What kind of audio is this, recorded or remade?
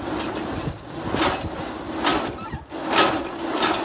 recorded